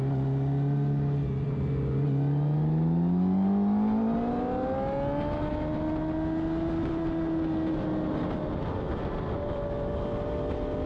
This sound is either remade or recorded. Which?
recorded